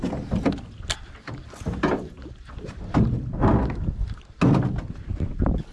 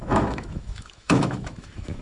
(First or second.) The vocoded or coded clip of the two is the second